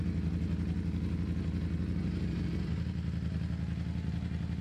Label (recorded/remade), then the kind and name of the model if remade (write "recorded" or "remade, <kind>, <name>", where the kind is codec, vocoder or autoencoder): recorded